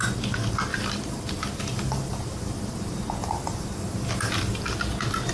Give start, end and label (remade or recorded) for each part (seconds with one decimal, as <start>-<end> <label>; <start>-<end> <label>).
0.0-0.7 recorded; 0.7-2.0 remade; 2.0-3.2 recorded; 3.2-4.6 remade; 4.6-5.3 recorded